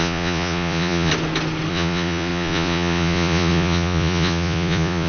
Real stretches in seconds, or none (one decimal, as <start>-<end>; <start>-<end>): 1.1-1.7